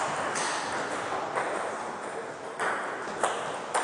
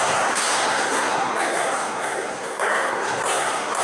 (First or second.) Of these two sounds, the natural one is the first